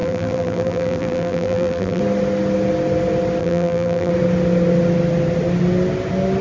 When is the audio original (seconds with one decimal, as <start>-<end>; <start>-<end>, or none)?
2.0-3.4; 4.1-6.4